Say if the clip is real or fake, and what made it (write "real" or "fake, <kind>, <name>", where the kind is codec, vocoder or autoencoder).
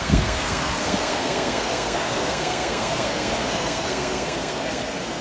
fake, codec, SNAC